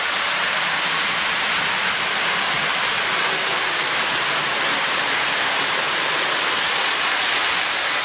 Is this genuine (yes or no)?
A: yes